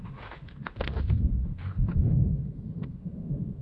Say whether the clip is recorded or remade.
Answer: remade